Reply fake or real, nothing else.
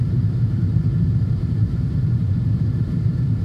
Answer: fake